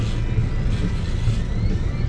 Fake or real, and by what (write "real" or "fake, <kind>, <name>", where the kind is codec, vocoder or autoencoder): real